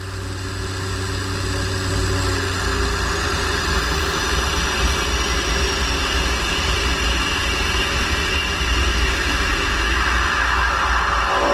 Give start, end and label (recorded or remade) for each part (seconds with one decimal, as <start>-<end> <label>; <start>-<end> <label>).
0.0-8.9 recorded; 8.9-10.8 remade; 10.8-11.5 recorded